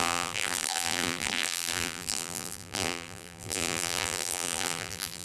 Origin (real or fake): fake